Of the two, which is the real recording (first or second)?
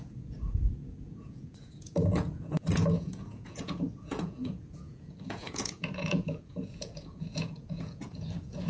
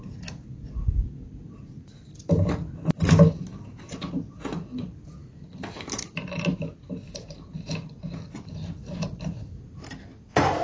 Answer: second